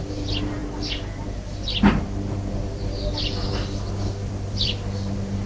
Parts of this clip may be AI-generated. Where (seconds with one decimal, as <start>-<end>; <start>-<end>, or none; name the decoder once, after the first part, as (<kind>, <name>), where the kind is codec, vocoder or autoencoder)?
0.0-0.6 (vocoder, BigVGAN v2); 2.5-5.5